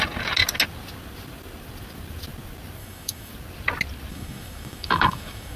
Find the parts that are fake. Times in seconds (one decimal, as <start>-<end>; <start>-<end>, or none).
2.8-3.3; 4.1-5.6